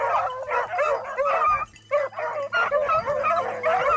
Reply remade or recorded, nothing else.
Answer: recorded